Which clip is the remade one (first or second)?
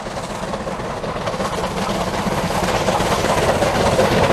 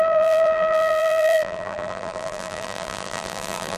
second